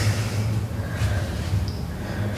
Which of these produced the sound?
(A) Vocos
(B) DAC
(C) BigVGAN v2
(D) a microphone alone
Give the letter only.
D